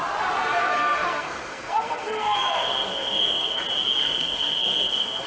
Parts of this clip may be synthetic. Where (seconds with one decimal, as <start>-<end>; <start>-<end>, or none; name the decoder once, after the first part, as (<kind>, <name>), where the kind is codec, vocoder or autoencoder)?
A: 0.6-3.6 (codec, SNAC); 4.0-5.3